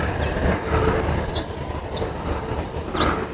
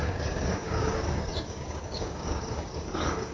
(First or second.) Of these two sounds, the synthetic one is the second